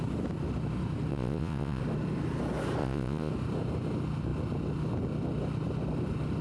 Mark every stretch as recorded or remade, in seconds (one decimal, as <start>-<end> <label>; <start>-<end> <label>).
0.0-1.1 recorded; 1.1-1.8 remade; 1.8-2.8 recorded; 2.8-3.3 remade; 3.3-6.4 recorded